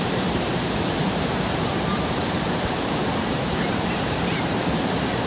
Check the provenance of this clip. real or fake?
fake